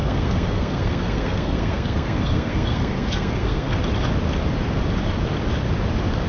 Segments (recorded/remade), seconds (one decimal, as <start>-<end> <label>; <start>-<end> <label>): 0.0-3.8 remade; 3.8-6.3 recorded